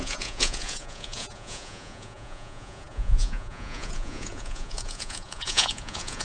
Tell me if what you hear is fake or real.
fake